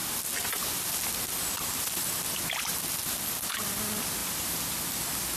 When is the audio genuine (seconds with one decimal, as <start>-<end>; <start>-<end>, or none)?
3.2-4.2; 4.7-5.4